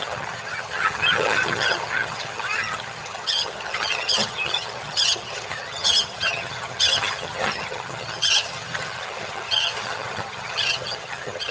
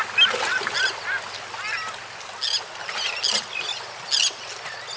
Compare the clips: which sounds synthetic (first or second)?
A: first